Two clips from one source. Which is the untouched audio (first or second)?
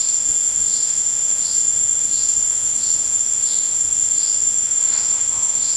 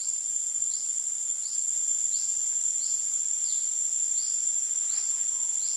second